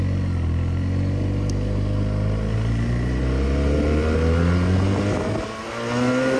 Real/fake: real